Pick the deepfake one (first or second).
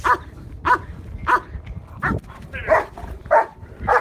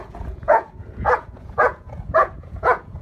second